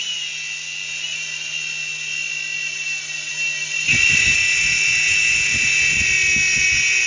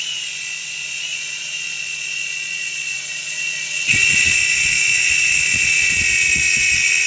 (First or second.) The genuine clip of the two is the first